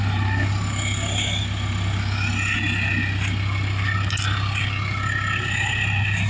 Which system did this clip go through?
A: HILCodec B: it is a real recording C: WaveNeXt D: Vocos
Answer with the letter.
B